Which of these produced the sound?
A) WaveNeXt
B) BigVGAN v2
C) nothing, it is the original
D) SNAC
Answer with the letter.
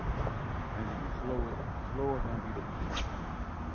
C